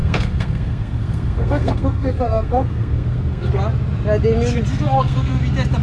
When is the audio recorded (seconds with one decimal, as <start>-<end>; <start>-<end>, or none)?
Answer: 3.5-4.7; 5.3-5.8